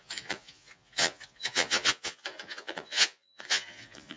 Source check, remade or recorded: remade